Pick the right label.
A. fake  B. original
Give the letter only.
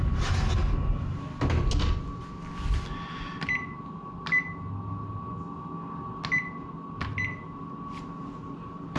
B